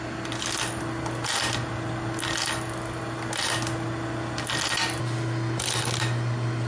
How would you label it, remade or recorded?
recorded